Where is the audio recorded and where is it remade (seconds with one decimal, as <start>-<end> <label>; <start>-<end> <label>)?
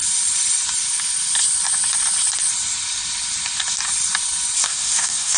0.0-4.6 recorded; 4.6-5.4 remade